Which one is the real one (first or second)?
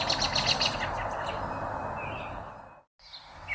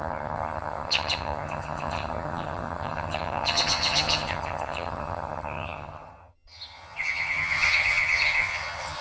first